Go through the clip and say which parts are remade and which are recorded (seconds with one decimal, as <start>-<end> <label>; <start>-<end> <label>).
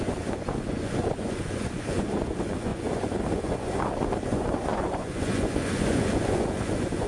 0.0-7.1 remade